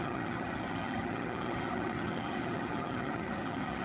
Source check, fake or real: fake